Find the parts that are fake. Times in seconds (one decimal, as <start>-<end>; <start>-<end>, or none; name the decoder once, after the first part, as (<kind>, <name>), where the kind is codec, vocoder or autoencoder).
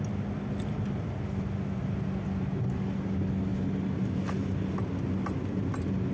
none